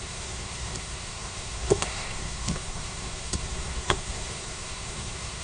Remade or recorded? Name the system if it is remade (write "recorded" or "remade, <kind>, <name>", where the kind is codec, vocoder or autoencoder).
remade, codec, SNAC